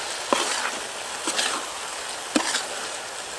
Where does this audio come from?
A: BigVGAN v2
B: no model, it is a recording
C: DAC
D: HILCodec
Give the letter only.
B